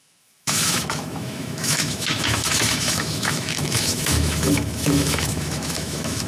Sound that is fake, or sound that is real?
fake